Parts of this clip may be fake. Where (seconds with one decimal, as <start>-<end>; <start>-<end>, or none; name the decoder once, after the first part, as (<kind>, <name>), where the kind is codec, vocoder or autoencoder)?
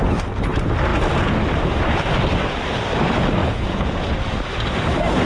3.4-4.1 (vocoder, Vocos)